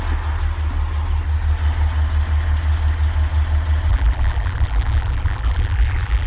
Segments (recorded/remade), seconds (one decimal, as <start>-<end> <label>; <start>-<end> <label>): 0.0-3.9 recorded; 3.9-6.3 remade